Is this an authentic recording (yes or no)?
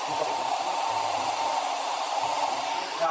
yes